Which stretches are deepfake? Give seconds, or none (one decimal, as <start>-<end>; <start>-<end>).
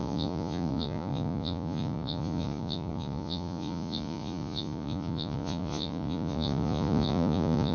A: 0.0-7.7